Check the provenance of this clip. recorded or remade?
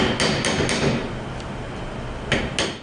recorded